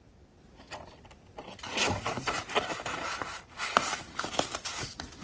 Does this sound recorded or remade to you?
recorded